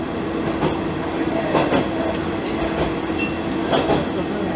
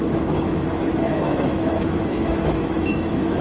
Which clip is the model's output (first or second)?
second